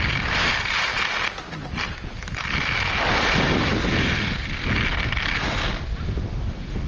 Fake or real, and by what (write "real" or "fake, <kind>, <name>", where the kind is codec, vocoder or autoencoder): real